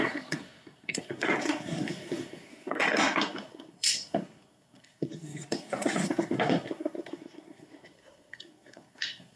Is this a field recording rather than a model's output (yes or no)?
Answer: no